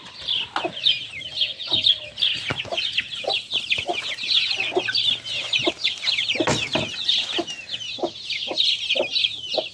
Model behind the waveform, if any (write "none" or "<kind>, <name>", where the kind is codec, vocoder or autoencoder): none